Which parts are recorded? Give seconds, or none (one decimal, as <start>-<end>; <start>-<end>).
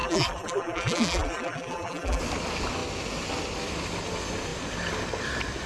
2.2-5.7